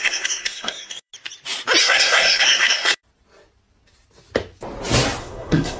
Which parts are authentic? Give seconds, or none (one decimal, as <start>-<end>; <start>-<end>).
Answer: 1.1-1.8; 3.0-5.2